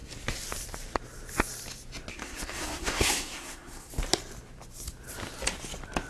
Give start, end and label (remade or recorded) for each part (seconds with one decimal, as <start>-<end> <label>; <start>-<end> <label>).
0.0-2.1 recorded; 2.1-3.9 remade; 3.9-6.1 recorded